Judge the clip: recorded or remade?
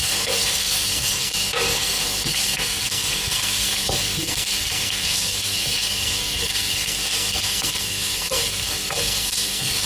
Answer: remade